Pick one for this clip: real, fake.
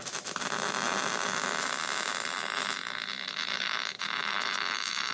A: real